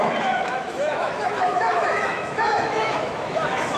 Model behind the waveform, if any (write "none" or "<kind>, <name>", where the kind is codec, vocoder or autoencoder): autoencoder, DAC-VAE